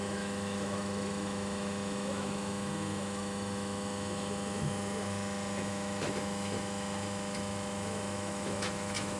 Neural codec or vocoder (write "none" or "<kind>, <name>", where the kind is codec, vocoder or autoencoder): autoencoder, DAC-VAE